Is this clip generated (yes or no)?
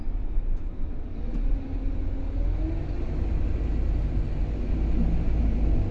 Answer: no